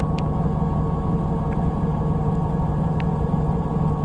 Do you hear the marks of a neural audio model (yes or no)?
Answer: no